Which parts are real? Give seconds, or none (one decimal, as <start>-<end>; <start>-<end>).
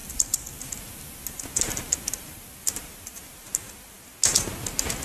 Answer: 0.0-5.0